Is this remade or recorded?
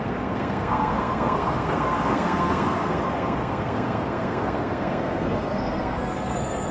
remade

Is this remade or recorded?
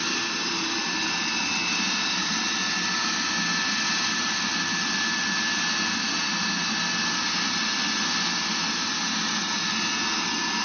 recorded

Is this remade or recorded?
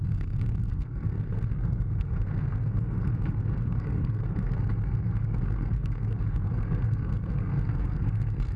remade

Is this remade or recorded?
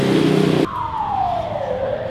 recorded